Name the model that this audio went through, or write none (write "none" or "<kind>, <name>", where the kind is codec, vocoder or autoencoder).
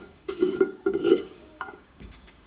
codec, DAC